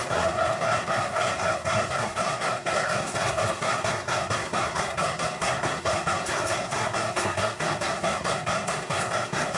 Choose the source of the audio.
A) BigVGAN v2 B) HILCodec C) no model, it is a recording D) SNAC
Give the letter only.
D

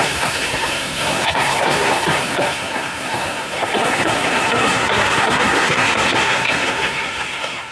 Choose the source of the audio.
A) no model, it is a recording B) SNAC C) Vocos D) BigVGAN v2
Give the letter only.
B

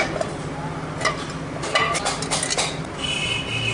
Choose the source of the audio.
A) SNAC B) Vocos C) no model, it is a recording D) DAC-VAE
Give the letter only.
C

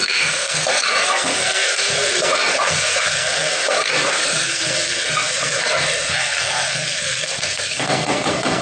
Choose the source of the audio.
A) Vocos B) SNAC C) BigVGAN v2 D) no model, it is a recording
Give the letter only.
B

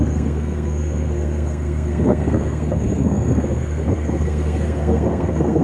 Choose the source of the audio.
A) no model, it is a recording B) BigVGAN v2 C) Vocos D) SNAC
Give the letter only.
D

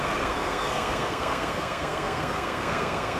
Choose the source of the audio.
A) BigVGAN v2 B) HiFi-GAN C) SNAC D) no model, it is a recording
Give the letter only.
C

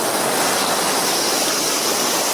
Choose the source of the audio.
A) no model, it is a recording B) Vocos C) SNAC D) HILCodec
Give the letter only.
A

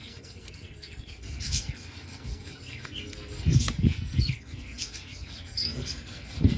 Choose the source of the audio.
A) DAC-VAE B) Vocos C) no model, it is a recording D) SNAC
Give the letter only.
D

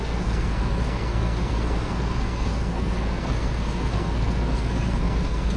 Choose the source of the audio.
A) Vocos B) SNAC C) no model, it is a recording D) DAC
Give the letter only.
B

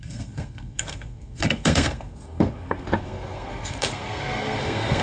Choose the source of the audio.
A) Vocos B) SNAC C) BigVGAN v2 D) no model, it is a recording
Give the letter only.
B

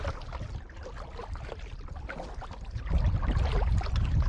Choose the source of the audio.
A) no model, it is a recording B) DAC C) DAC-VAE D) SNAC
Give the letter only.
A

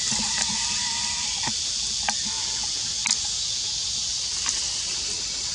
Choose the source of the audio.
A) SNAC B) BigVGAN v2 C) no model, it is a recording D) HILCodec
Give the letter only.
C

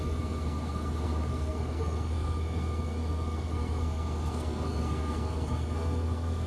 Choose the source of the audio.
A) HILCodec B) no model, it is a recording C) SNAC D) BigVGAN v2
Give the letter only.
C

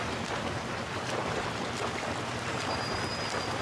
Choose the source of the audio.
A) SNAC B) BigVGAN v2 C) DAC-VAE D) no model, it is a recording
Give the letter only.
D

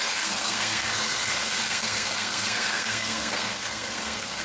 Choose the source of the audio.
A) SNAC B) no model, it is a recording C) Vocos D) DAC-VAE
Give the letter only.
A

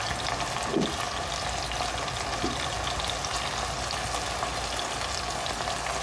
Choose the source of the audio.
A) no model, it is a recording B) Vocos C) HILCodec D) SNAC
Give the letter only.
A